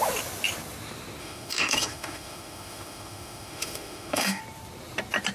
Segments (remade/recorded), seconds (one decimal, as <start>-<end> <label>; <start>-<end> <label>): 0.0-1.2 recorded; 1.2-4.4 remade; 4.4-5.3 recorded